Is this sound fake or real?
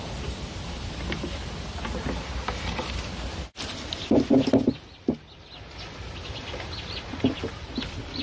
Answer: real